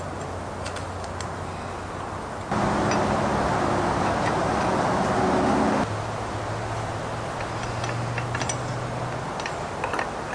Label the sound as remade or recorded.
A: recorded